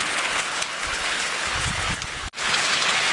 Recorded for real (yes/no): no